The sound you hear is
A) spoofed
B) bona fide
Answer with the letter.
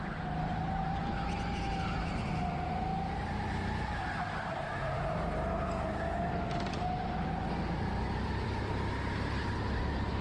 B